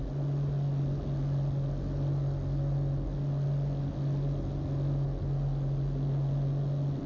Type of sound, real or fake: real